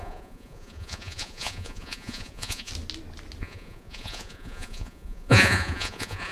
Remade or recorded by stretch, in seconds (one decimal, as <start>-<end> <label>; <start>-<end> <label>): 0.0-2.7 remade; 2.7-3.4 recorded; 3.4-6.3 remade